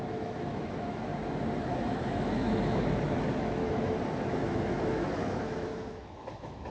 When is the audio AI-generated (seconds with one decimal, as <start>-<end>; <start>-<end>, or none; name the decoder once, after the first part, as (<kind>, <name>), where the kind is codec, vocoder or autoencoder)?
0.0-1.1 (autoencoder, DAC-VAE); 1.7-6.7